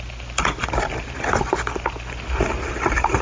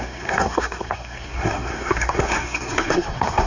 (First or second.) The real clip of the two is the first